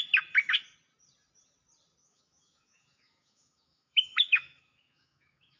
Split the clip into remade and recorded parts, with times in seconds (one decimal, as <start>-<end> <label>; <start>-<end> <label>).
0.0-2.0 recorded; 2.0-5.6 remade